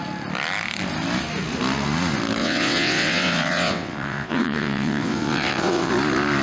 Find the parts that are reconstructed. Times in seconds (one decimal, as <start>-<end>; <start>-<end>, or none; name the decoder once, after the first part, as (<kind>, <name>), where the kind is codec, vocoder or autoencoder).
2.4-5.9 (vocoder, WaveNeXt)